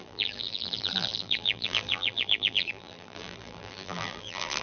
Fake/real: fake